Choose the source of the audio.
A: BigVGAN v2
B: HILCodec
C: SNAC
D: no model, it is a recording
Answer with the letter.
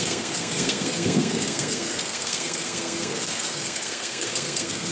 C